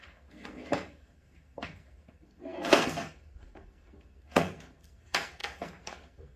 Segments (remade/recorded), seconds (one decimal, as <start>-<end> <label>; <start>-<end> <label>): 0.0-6.4 remade